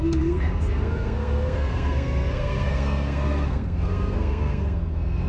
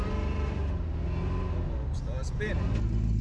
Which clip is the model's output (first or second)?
first